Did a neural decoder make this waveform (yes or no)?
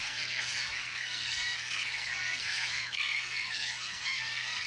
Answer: yes